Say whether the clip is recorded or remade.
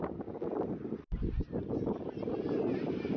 recorded